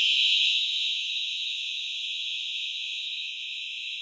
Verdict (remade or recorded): remade